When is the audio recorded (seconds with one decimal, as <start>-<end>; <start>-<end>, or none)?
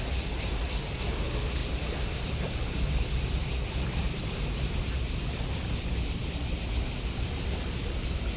0.0-1.6; 5.7-8.4